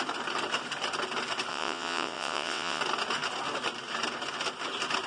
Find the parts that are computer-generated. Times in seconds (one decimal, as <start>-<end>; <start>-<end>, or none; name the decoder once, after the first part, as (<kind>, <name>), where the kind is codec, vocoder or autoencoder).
1.5-2.8 (vocoder, WaveNeXt)